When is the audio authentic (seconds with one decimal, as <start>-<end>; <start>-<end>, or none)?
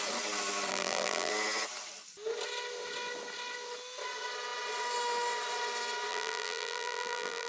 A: 0.0-0.7; 1.3-6.1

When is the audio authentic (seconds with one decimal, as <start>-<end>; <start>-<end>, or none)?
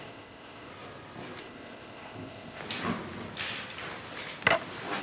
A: 0.7-1.4; 2.6-5.0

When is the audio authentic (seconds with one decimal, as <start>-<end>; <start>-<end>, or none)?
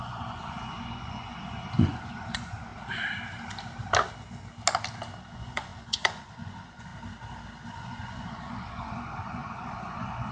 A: 2.7-5.2; 6.9-7.7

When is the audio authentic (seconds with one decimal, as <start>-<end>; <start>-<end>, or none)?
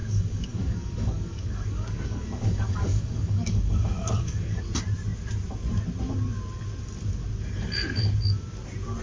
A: 4.6-9.0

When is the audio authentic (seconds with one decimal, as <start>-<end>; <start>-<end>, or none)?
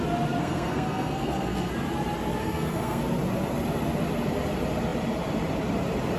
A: 0.0-0.4; 1.7-2.4; 3.0-6.2